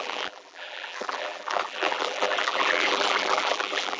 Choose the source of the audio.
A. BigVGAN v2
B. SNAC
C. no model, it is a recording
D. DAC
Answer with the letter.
A